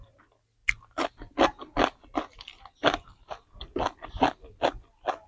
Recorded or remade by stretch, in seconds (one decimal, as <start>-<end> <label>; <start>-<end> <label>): 0.0-5.3 recorded